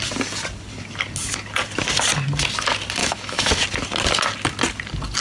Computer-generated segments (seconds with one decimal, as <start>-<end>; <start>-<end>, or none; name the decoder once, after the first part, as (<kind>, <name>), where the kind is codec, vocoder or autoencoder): 3.0-3.5 (autoencoder, DAC-VAE)